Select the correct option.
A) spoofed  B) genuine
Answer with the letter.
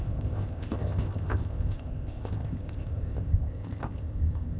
A